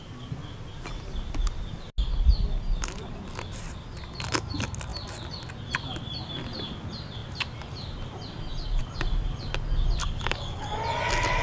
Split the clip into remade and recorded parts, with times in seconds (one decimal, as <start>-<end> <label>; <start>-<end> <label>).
0.0-10.0 recorded; 10.0-10.8 remade; 10.8-11.4 recorded